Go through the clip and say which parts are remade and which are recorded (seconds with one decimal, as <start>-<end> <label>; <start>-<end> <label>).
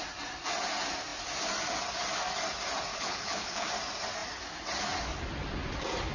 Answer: 0.0-2.9 recorded; 2.9-3.7 remade; 3.7-6.1 recorded